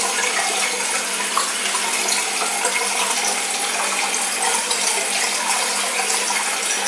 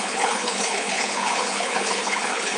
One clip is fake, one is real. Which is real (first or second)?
first